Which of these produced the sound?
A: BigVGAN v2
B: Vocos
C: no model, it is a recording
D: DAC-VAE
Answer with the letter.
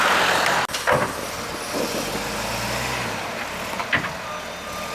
C